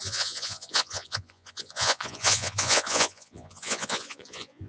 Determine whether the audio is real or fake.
fake